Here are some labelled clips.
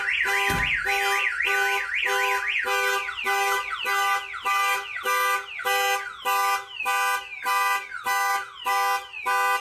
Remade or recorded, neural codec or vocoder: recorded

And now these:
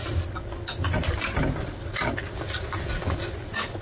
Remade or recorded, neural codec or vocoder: recorded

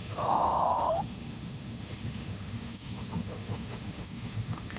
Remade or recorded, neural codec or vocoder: remade, autoencoder, DAC-VAE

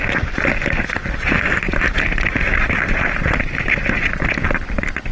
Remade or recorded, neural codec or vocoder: recorded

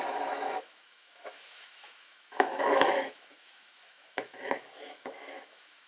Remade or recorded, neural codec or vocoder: remade, autoencoder, DAC-VAE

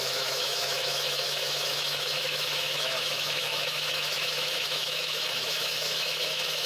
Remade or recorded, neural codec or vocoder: remade, autoencoder, DAC-VAE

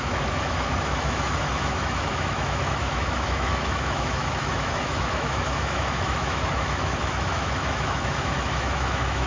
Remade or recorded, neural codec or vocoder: remade, autoencoder, DAC-VAE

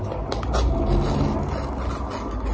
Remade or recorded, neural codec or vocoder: recorded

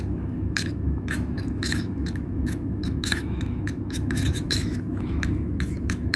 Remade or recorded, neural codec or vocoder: remade, autoencoder, DAC-VAE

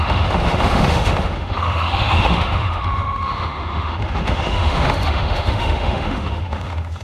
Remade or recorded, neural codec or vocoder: remade, autoencoder, DAC-VAE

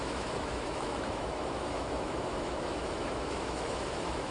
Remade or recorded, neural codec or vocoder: remade, autoencoder, DAC-VAE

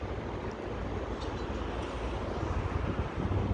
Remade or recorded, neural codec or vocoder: recorded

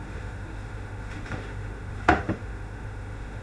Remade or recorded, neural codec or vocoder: remade, autoencoder, DAC-VAE